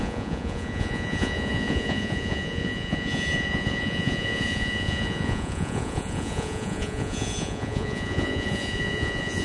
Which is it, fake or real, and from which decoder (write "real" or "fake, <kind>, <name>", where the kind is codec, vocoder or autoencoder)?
fake, vocoder, Vocos